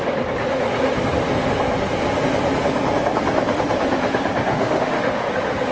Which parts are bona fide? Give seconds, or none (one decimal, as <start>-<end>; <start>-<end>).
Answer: 0.0-4.5; 5.3-5.7